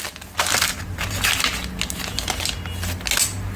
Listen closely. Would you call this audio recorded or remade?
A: recorded